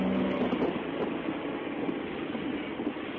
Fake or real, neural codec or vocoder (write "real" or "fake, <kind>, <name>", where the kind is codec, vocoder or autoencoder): real